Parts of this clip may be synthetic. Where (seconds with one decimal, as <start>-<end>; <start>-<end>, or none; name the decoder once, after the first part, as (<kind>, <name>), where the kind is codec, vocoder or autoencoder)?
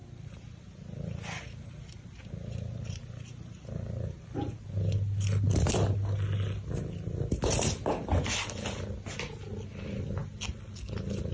none